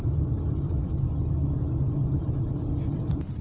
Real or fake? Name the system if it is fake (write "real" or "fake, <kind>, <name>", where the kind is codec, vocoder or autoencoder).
real